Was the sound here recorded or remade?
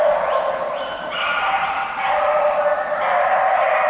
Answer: recorded